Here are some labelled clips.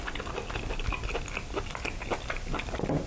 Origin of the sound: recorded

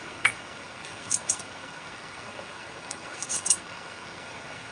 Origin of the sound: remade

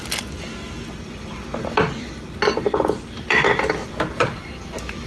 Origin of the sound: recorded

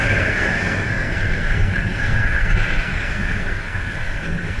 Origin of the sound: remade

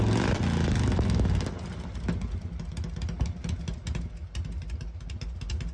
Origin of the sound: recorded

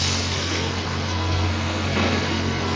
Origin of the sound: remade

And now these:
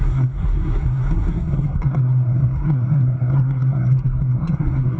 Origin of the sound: remade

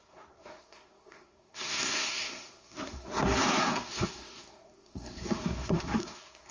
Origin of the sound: remade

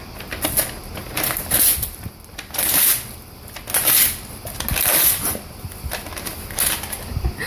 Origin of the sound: recorded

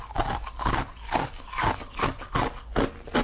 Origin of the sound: recorded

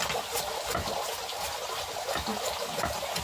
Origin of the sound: recorded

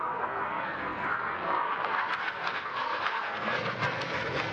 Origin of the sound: remade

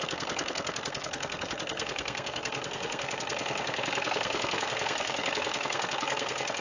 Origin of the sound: remade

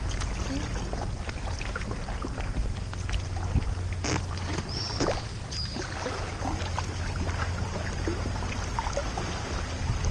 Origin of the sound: recorded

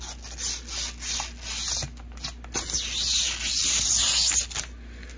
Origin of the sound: recorded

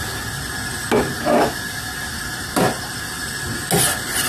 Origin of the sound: recorded